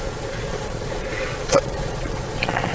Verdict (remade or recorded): remade